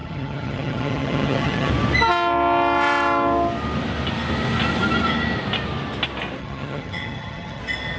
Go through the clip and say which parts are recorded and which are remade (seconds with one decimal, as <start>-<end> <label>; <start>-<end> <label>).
0.0-1.7 remade; 1.7-6.4 recorded; 6.4-7.6 remade; 7.6-8.0 recorded